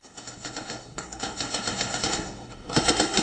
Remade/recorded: remade